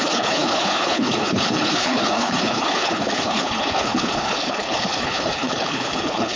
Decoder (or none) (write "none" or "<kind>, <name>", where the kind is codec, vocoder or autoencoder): codec, HILCodec